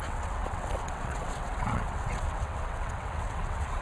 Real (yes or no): no